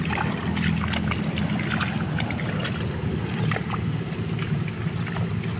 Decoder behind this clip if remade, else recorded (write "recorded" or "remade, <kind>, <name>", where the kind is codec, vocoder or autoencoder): recorded